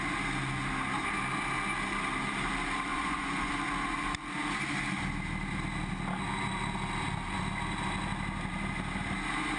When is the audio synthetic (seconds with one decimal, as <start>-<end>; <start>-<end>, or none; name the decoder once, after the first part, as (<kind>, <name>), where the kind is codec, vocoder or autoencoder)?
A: 2.9-3.5 (vocoder, Vocos)